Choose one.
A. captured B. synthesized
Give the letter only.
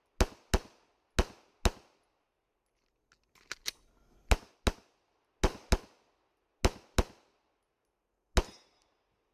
A